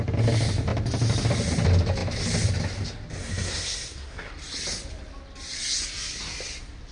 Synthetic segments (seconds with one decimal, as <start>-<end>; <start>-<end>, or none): 3.2-4.3